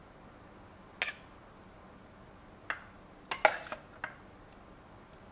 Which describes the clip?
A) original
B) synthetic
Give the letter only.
A